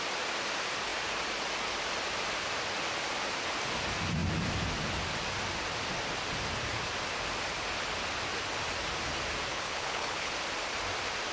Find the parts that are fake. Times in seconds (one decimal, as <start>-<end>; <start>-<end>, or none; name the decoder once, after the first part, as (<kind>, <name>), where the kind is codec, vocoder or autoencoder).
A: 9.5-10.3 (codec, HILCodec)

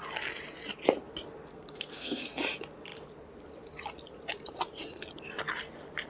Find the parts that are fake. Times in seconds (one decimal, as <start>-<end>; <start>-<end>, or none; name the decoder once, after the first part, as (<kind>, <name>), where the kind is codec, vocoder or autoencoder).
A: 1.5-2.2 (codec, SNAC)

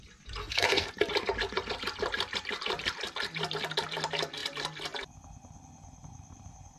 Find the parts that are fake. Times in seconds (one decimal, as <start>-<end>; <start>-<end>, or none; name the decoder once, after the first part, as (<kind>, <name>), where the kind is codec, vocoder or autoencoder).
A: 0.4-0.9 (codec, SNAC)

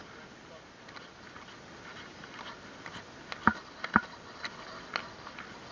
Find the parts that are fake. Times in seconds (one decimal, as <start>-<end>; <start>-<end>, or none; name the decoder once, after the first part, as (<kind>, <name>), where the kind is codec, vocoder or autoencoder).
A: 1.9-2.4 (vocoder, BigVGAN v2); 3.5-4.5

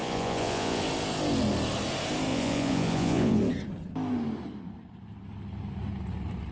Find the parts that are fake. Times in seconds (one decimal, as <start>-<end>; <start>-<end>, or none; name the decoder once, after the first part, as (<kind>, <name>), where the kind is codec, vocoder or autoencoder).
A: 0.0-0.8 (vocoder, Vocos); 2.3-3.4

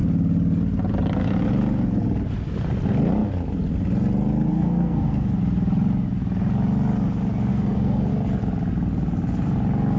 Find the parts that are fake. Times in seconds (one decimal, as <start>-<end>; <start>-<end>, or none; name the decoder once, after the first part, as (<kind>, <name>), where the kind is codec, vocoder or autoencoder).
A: 4.5-5.3 (codec, SNAC); 7.5-8.1